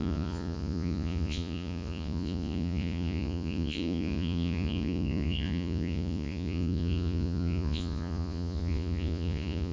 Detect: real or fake fake